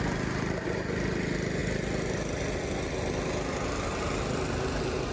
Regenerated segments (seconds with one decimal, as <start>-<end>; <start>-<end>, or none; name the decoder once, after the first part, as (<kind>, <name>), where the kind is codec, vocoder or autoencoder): none

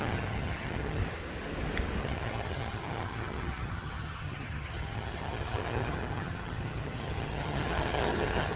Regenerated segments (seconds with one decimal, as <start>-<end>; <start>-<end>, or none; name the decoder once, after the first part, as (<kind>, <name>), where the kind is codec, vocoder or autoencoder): 0.0-1.0 (vocoder, HiFi-GAN); 2.0-8.6